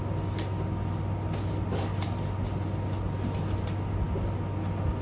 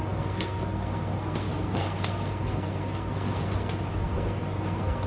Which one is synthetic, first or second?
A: second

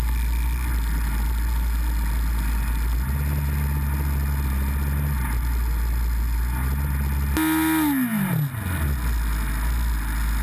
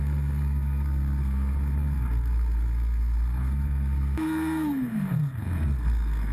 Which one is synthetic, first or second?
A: second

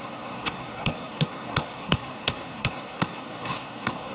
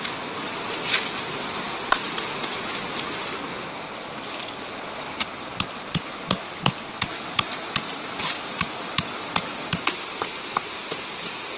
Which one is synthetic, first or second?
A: first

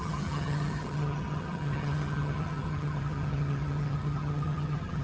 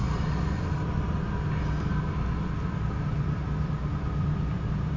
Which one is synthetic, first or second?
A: first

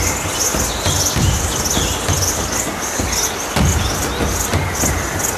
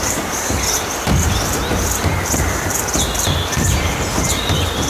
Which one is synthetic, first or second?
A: second